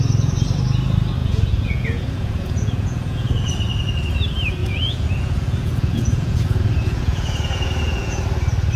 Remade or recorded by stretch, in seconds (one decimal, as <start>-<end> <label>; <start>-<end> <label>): 0.0-1.2 recorded; 1.2-3.5 remade; 3.5-4.6 recorded; 4.6-8.2 remade; 8.2-8.8 recorded